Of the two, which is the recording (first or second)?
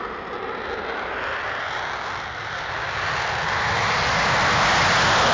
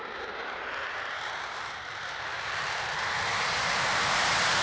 first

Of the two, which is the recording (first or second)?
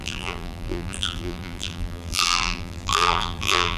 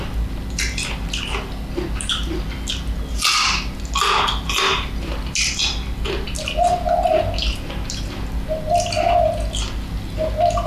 second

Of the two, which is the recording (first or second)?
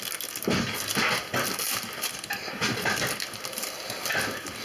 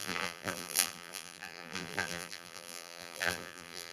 first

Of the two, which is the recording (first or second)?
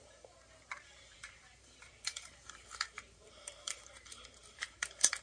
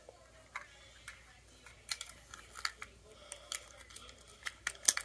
second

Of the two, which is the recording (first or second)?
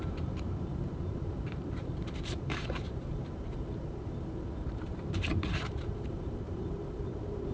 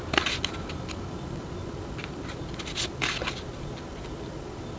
second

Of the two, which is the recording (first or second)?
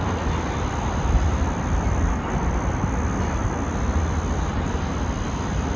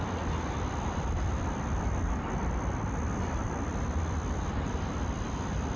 first